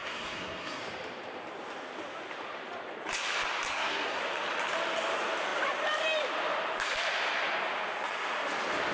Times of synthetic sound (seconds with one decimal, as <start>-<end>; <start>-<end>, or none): 0.0-0.8; 3.7-4.2